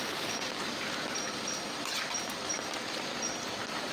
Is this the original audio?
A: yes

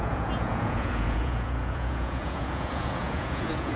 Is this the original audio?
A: no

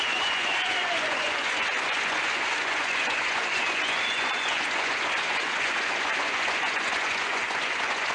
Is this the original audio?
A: no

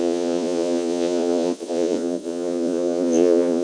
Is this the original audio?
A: no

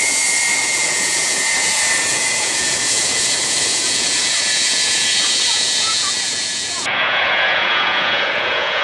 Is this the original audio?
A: no